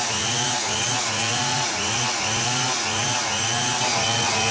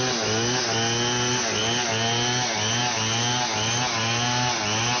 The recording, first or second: second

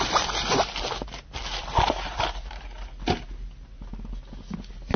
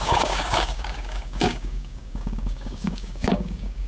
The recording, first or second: first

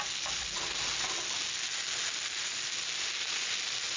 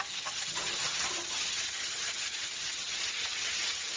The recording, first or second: first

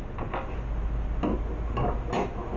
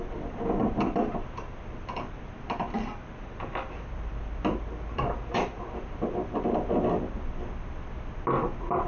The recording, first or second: first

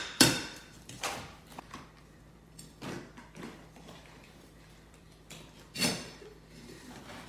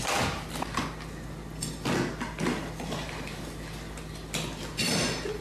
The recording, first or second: second